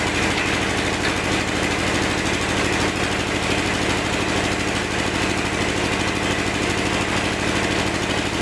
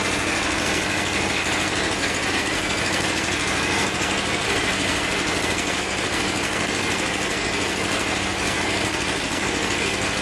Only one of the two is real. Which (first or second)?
first